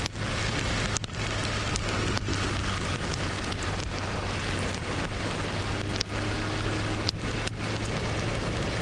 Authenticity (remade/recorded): recorded